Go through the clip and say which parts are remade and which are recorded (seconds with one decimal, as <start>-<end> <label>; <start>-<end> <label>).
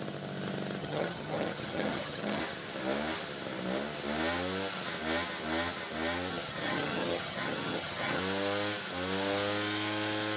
0.0-0.8 recorded; 0.8-2.4 remade; 2.4-6.3 recorded; 6.3-8.2 remade; 8.2-10.4 recorded